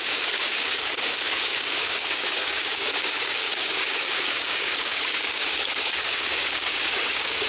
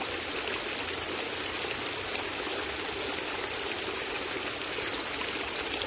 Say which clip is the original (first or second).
second